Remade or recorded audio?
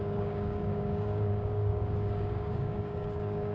remade